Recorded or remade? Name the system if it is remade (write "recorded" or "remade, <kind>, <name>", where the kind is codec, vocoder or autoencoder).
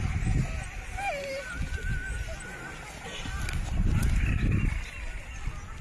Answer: recorded